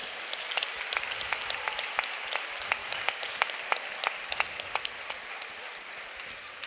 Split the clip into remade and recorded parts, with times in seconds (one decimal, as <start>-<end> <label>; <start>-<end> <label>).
0.0-2.8 recorded; 2.8-3.5 remade; 3.5-6.7 recorded